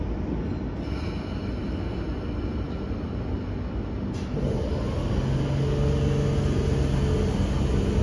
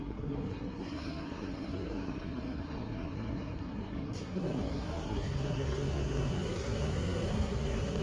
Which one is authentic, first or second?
first